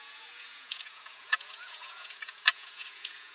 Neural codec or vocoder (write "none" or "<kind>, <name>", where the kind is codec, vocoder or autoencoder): vocoder, Vocos